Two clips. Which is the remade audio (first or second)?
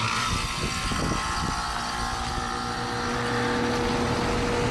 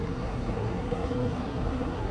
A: second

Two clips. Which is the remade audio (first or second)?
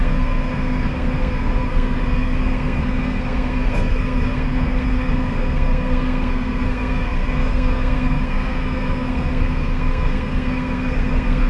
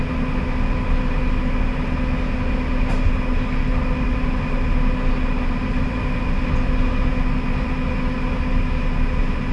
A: first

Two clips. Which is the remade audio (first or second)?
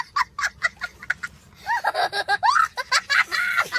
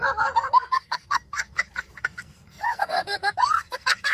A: second